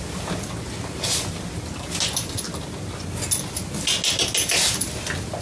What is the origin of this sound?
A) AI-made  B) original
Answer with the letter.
B